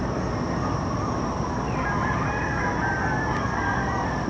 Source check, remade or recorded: recorded